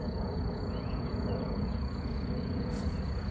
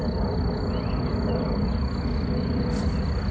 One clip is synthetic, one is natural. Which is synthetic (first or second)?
first